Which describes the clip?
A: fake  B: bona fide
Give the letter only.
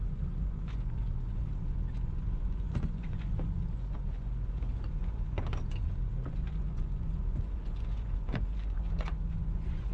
A